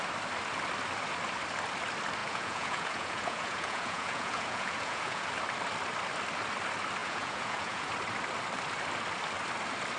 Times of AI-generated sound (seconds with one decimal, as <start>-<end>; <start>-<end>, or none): 2.2-5.3; 7.0-7.9